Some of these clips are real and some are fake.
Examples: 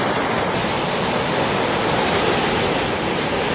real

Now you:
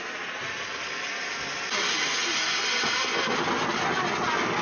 real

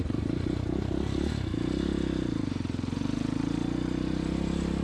real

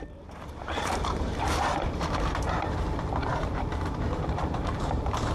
fake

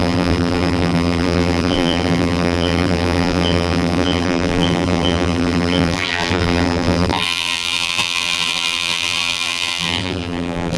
fake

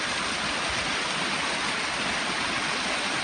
real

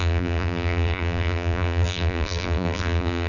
fake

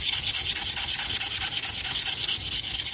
real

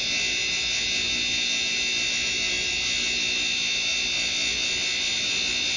real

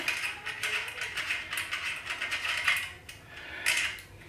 real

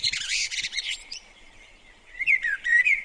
fake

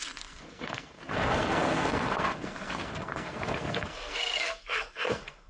fake